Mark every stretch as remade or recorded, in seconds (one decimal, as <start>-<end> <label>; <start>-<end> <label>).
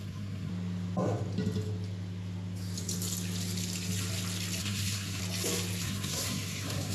0.0-0.5 remade; 0.5-4.6 recorded; 4.6-5.2 remade; 5.2-5.8 recorded; 5.8-6.9 remade